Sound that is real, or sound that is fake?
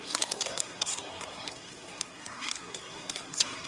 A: fake